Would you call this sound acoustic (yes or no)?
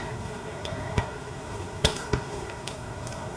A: no